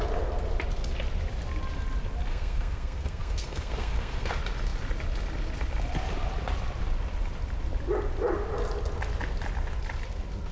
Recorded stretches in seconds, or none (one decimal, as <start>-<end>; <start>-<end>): 0.0-2.3; 4.3-10.5